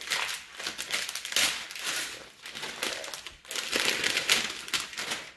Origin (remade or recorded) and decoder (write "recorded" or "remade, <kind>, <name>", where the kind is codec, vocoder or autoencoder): recorded